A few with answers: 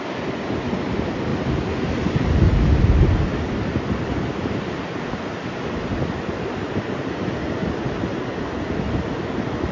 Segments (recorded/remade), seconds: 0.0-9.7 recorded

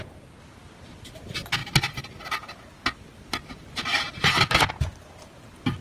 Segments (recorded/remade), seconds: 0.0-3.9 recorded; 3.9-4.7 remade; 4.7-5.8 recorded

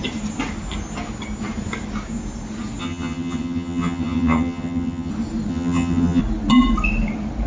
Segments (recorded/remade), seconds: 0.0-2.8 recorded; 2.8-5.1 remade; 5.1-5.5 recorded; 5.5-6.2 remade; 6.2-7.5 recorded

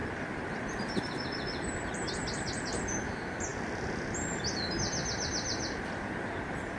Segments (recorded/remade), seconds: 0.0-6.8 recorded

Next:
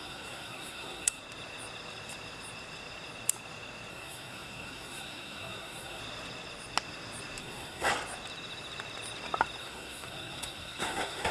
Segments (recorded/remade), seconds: 0.0-1.2 remade; 1.2-3.9 recorded; 3.9-6.0 remade; 6.0-7.4 recorded; 7.4-7.9 remade; 7.9-9.6 recorded; 9.6-11.3 remade

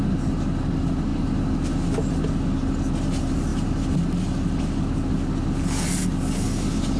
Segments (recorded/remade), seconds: 0.0-7.0 recorded

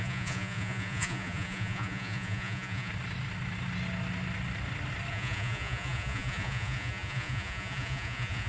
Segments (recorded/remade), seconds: 0.0-2.9 remade; 2.9-5.1 recorded; 5.1-8.5 remade

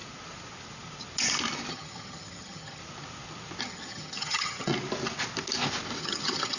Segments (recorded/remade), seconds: 0.0-1.7 recorded; 1.7-2.8 remade; 2.8-3.6 recorded; 3.6-4.7 remade; 4.7-6.0 recorded; 6.0-6.6 remade